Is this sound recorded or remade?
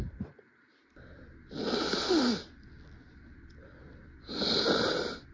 recorded